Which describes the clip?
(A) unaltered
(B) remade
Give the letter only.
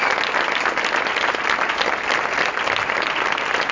A